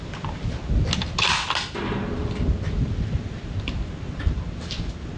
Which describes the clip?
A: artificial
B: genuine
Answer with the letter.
B